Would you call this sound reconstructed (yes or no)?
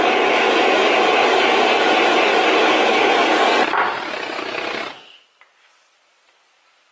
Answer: no